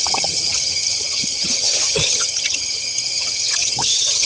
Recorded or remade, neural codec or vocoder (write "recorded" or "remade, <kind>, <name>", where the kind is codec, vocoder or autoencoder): remade, vocoder, HiFi-GAN